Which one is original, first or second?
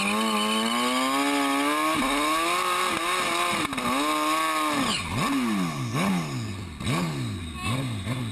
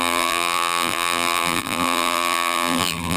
first